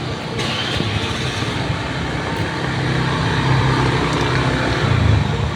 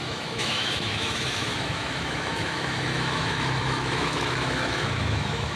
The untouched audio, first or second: first